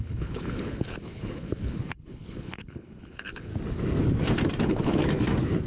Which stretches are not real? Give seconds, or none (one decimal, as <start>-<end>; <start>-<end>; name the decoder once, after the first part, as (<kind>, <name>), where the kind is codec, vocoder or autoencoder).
0.0-3.5 (codec, HILCodec); 4.6-5.0